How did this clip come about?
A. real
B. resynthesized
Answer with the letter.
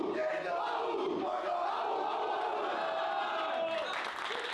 A